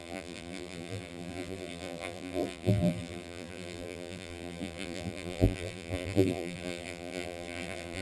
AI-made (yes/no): yes